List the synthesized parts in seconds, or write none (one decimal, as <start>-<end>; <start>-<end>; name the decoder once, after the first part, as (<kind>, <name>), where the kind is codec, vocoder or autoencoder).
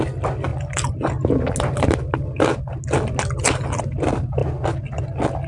none